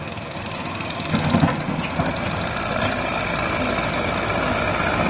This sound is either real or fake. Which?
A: real